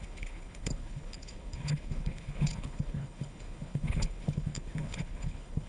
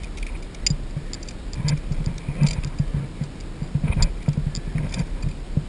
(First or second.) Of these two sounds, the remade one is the first